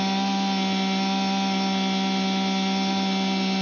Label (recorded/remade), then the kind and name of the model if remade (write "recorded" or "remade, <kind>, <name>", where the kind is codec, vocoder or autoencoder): recorded